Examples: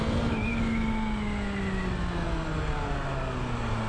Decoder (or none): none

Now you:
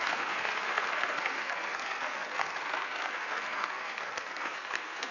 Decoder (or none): codec, SNAC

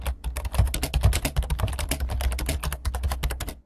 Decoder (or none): none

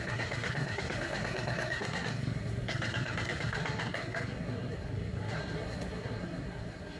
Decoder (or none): codec, SNAC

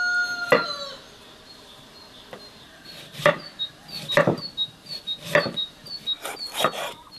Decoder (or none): none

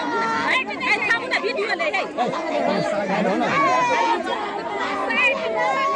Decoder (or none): none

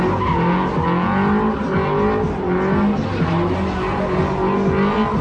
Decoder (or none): none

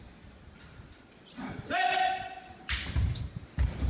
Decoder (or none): none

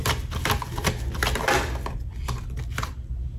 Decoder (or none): none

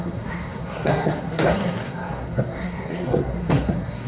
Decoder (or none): codec, SNAC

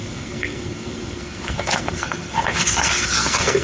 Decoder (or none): codec, SNAC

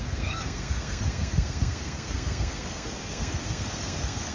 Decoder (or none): codec, SNAC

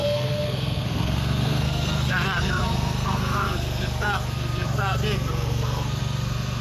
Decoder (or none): codec, SNAC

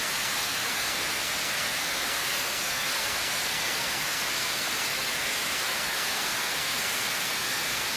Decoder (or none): codec, SNAC